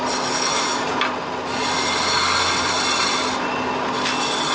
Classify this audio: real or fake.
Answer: real